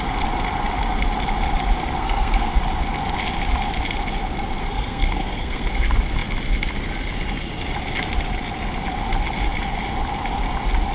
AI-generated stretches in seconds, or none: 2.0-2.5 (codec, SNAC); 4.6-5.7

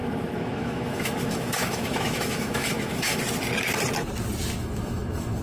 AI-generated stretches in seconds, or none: 0.0-3.2 (autoencoder, DAC-VAE); 4.6-5.4

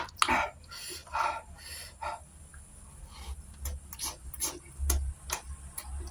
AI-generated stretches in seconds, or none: none

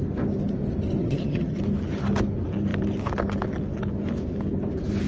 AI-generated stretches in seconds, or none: 1.0-1.6 (vocoder, HiFi-GAN)

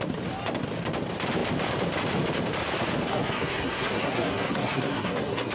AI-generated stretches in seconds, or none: 3.1-5.5 (codec, SNAC)

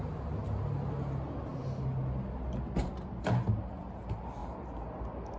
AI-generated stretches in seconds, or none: none

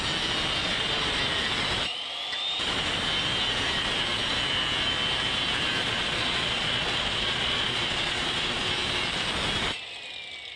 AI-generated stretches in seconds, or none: 0.6-1.2 (vocoder, Vocos); 5.8-8.6

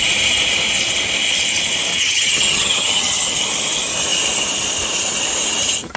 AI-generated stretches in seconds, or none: 1.9-3.4 (vocoder, HiFi-GAN)